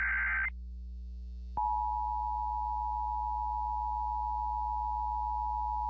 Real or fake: real